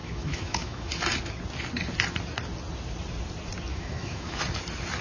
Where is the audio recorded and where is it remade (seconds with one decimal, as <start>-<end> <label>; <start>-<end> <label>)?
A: 0.0-0.9 remade; 0.9-3.7 recorded; 3.7-4.4 remade; 4.4-5.0 recorded